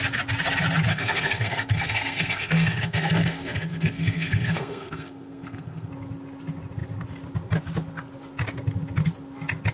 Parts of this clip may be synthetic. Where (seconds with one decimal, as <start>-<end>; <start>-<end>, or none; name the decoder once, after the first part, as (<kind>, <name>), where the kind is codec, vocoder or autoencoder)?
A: 0.9-5.9 (codec, SNAC)